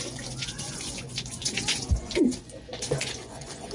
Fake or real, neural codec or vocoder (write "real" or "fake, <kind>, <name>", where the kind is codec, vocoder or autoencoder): fake, vocoder, Vocos